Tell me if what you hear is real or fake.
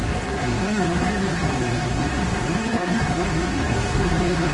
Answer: fake